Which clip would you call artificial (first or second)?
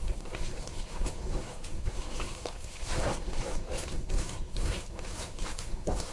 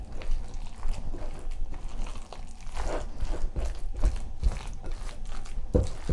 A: first